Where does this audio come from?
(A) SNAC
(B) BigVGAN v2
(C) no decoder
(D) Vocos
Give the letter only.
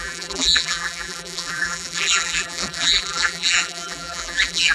B